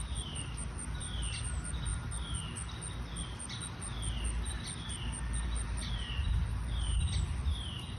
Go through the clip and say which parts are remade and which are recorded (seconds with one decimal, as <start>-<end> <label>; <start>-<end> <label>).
0.0-8.0 recorded